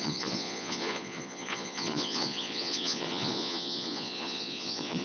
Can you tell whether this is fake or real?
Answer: fake